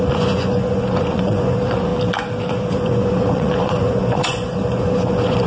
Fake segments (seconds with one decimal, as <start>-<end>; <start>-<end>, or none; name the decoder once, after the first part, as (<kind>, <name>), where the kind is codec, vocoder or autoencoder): 0.0-1.9 (vocoder, Vocos); 2.5-5.5